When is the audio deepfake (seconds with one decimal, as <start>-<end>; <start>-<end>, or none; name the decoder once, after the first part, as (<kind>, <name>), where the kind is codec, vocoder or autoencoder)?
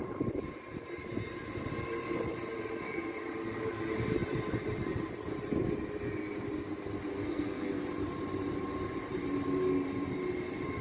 7.1-7.8 (codec, SNAC)